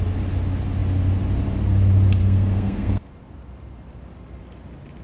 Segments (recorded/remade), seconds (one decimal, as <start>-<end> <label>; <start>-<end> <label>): 0.0-2.2 recorded; 2.2-3.1 remade; 3.1-5.0 recorded